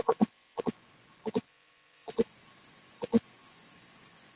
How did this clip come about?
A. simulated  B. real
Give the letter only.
A